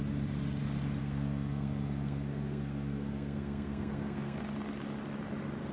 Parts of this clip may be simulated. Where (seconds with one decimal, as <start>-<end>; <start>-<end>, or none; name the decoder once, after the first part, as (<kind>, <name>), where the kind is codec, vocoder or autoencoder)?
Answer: 1.0-4.4 (codec, SNAC)